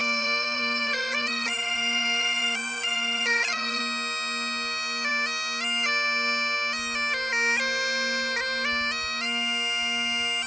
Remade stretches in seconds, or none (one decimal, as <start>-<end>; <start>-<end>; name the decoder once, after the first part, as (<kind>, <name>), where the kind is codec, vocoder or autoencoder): 0.0-3.8 (vocoder, Vocos)